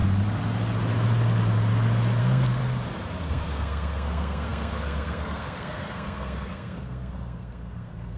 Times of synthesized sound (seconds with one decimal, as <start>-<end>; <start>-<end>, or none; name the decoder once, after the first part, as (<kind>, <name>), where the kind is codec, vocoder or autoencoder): 2.2-2.6 (codec, SNAC); 3.3-8.2